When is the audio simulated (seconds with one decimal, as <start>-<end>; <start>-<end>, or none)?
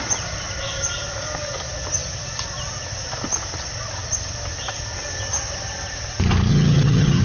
6.5-7.2